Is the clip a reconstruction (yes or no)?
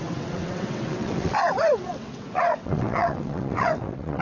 yes